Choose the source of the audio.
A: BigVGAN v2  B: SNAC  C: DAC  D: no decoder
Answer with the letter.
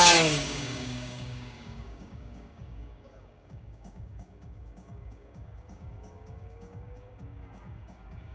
C